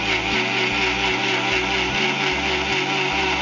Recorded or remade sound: recorded